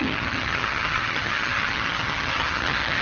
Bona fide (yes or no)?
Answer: no